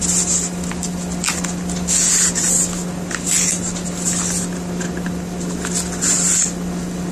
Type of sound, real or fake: real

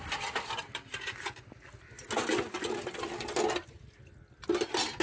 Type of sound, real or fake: real